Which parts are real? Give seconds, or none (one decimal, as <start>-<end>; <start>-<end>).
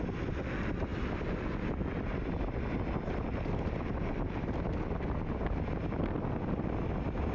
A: 0.0-7.3